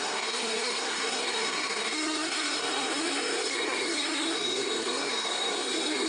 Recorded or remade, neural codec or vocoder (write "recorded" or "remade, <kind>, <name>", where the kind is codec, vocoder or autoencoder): remade, codec, SNAC